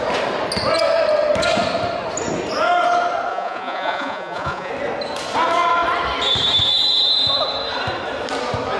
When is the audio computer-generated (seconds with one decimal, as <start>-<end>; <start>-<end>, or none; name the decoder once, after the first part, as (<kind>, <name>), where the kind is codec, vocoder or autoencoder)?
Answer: 3.3-4.7 (vocoder, Vocos)